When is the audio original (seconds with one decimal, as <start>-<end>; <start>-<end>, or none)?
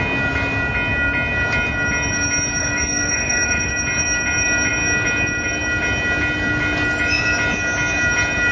0.0-2.6; 3.7-8.5